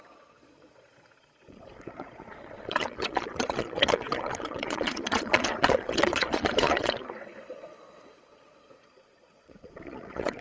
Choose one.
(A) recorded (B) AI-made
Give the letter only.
B